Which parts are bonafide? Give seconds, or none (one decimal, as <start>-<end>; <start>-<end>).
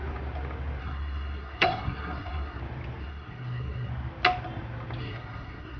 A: 0.0-0.8; 2.6-3.0; 3.9-5.0